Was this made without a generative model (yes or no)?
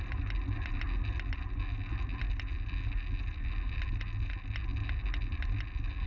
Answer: yes